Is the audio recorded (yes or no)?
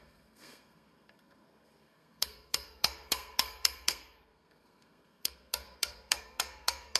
no